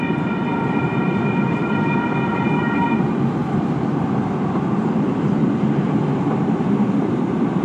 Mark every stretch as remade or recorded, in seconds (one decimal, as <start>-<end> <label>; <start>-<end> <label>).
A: 0.0-7.6 remade